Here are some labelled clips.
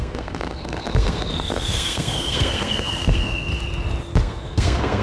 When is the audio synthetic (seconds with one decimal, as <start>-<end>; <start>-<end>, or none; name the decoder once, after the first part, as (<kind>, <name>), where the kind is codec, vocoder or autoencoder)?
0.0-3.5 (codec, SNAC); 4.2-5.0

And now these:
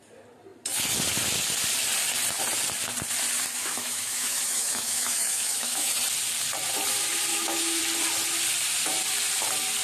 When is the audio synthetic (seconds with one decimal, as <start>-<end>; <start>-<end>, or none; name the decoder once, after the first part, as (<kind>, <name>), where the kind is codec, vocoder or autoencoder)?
3.6-5.9 (autoencoder, DAC-VAE); 7.3-7.8

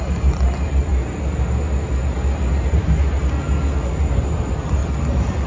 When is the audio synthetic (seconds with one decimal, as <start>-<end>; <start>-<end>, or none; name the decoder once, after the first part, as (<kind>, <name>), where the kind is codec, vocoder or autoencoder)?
none